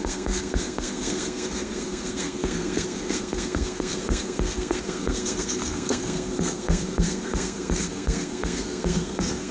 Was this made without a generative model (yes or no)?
no